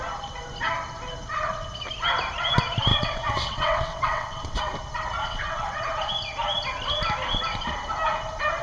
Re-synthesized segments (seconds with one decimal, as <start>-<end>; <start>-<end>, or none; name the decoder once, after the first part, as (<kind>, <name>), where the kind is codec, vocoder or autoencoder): 2.9-4.6 (vocoder, WaveNeXt); 5.2-5.8